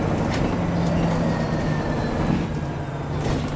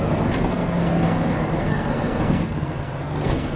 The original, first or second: first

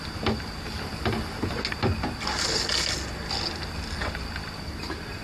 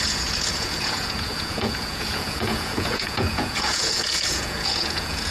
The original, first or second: first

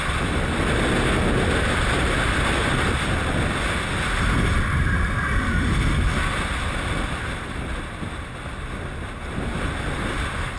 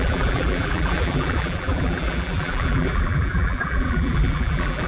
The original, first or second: first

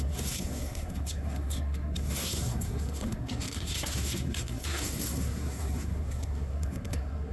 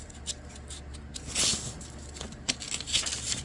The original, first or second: second